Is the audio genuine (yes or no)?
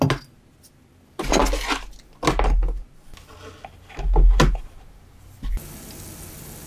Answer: yes